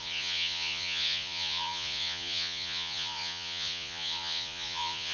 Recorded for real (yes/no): no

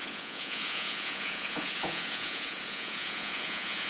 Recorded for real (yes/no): no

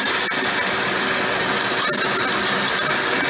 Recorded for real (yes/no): yes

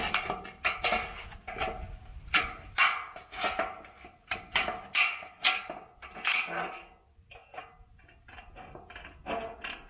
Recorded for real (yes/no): yes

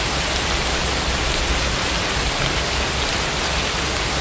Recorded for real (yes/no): yes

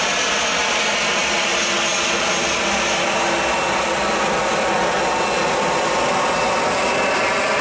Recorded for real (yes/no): yes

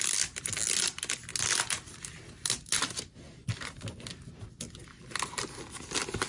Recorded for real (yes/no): yes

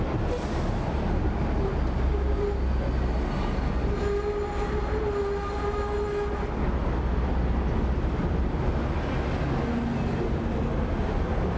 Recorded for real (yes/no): yes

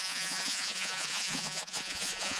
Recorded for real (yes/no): no